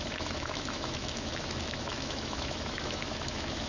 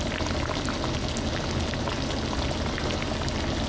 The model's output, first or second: first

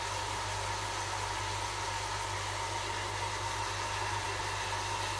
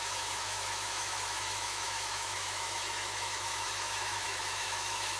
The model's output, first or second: second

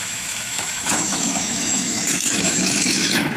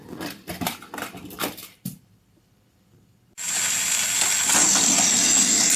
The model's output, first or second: first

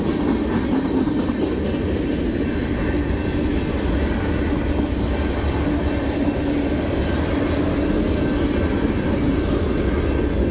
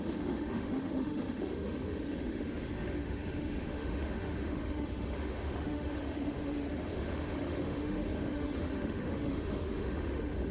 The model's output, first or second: second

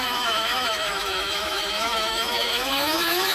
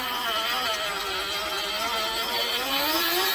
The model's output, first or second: first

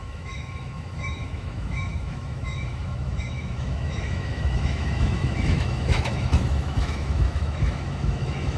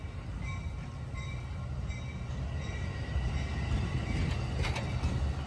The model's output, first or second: first